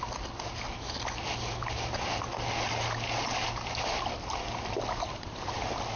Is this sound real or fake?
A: real